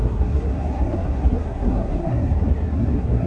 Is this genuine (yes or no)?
no